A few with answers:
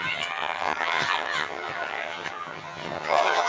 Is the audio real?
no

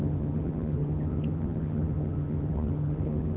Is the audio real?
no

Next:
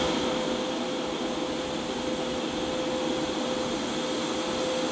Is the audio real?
yes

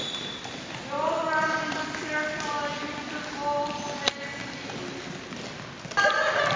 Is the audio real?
yes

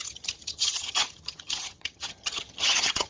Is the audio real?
no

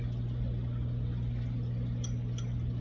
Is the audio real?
yes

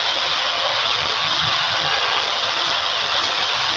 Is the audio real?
no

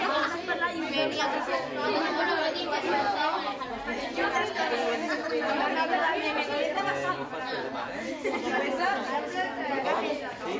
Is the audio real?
yes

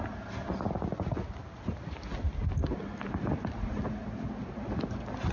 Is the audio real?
yes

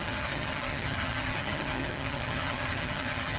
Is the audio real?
no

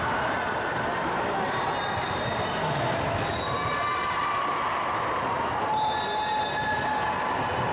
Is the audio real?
yes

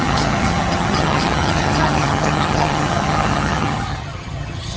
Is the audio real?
no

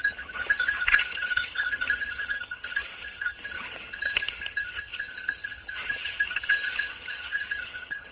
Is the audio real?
no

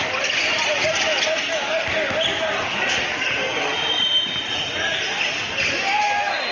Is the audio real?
yes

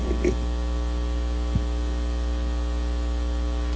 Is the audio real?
yes